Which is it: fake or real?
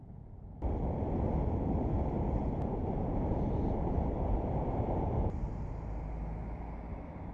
real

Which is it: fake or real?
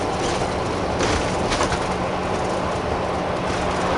real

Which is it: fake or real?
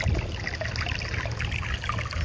real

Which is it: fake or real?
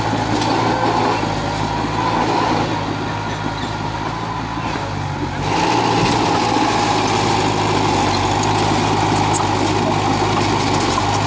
real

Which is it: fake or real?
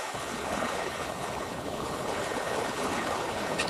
fake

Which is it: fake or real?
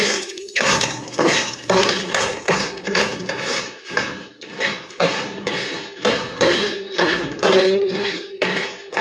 fake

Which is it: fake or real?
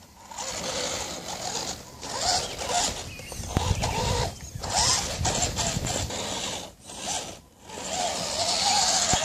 real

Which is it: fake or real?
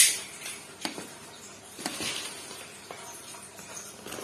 fake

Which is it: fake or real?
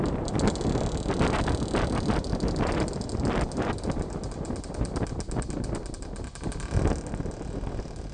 real